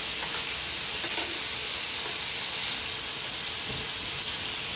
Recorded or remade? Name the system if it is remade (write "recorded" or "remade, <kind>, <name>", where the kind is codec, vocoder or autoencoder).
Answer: recorded